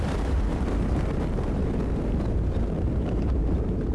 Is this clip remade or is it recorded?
remade